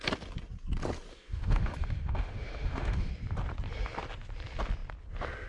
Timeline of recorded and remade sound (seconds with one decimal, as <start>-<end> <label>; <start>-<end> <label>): 0.0-1.1 recorded; 1.1-3.1 remade; 3.1-5.5 recorded